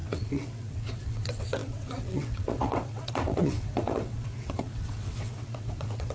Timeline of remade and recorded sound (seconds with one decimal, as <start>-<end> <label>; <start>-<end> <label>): 0.0-6.1 remade